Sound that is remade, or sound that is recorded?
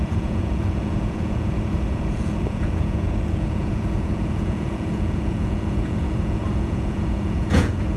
remade